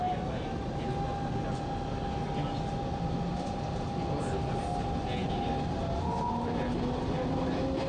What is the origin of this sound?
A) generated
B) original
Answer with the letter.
B